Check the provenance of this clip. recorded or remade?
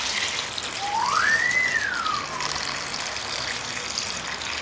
recorded